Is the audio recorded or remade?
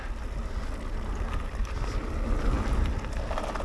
recorded